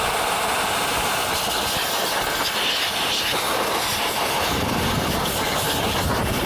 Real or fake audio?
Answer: real